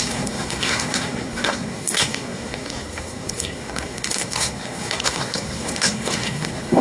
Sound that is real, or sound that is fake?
fake